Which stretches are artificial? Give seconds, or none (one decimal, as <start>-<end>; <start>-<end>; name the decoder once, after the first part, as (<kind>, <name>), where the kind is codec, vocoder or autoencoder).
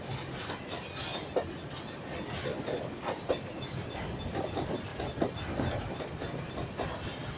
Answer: none